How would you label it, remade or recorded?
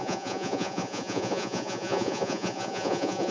remade